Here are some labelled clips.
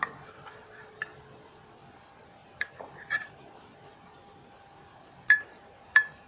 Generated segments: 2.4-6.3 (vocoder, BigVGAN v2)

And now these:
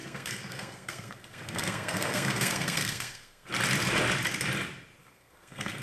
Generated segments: 0.0-3.5 (codec, SNAC); 5.0-5.8

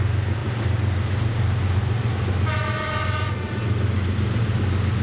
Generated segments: none

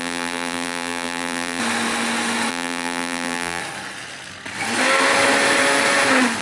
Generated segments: 0.0-1.6 (vocoder, BigVGAN v2); 2.5-3.6